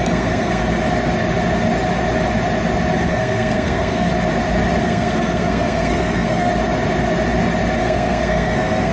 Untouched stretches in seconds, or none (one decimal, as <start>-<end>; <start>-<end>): 0.6-3.1; 4.1-4.8; 6.5-7.8